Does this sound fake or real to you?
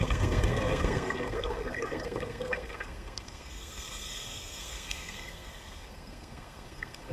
fake